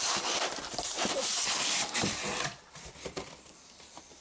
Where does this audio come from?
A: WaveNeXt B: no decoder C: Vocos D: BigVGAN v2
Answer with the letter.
D